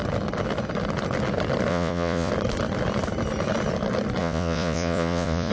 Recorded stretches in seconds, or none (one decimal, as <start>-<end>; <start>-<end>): 0.0-1.7; 2.3-4.2